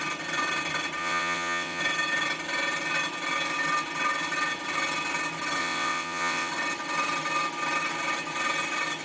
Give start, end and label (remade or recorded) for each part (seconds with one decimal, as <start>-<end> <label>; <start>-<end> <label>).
0.0-1.0 recorded; 1.0-1.8 remade; 1.8-5.6 recorded; 5.6-6.5 remade; 6.5-9.0 recorded